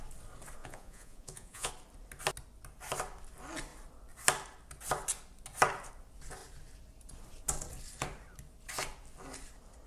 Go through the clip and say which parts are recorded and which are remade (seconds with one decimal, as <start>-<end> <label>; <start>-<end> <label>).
0.0-0.6 recorded; 0.6-1.7 remade; 1.7-9.9 recorded

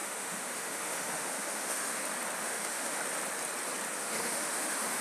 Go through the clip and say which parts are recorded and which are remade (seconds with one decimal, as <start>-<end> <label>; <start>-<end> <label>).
0.0-2.0 remade; 2.0-2.4 recorded; 2.4-3.0 remade; 3.0-4.0 recorded; 4.0-5.0 remade